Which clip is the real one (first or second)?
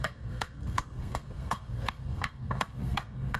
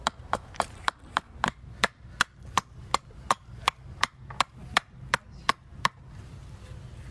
second